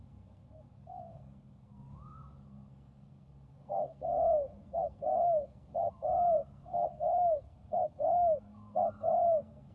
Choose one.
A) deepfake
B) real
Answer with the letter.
A